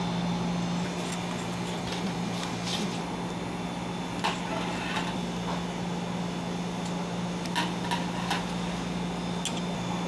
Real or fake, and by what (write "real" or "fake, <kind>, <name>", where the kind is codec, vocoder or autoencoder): real